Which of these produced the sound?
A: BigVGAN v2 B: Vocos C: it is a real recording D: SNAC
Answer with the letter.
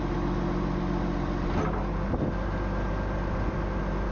C